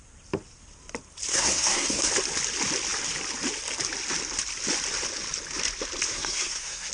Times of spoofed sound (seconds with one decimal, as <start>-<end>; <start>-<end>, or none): 1.3-2.1; 6.1-6.9

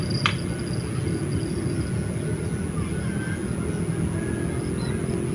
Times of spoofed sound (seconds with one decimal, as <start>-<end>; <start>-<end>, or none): none

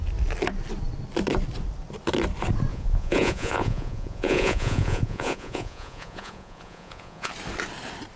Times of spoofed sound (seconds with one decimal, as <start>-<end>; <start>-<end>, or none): 2.7-7.3

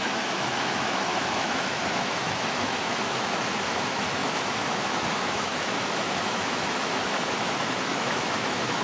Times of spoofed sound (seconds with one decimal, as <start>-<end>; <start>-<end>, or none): 0.0-8.8

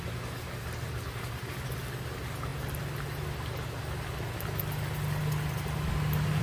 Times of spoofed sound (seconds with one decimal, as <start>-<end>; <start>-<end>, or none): none

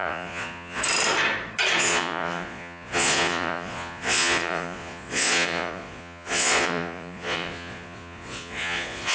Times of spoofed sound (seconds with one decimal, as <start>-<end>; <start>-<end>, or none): 0.0-0.8; 1.8-9.1

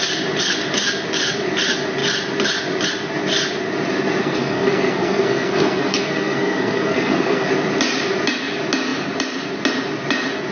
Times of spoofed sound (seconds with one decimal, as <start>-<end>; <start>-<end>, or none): 4.2-7.5